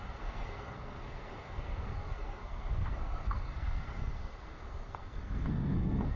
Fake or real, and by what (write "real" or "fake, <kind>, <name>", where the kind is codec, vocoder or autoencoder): fake, codec, SNAC